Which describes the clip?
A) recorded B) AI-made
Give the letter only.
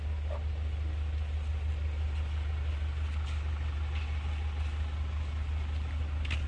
A